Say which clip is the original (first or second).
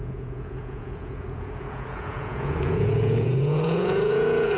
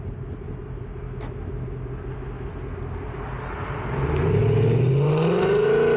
second